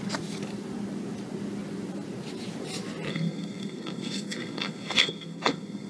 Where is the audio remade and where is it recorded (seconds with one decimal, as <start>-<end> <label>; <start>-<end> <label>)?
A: 0.0-3.1 recorded; 3.1-5.9 remade